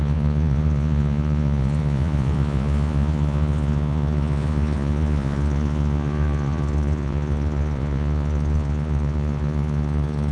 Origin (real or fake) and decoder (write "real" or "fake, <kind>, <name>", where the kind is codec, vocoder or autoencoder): fake, vocoder, Vocos